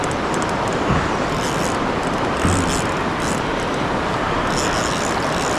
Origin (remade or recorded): recorded